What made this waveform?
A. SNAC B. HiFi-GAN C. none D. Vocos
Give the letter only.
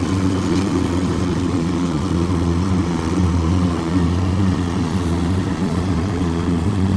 D